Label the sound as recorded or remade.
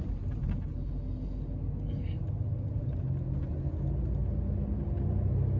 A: recorded